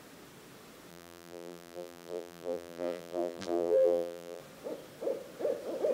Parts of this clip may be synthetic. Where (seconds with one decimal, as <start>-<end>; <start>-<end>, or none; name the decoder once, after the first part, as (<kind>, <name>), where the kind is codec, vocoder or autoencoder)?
0.9-4.4 (vocoder, BigVGAN v2)